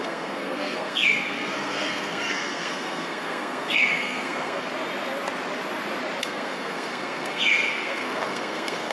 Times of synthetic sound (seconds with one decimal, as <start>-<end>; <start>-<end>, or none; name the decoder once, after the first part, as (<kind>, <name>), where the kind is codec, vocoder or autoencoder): 0.0-4.7 (codec, SNAC); 6.2-8.9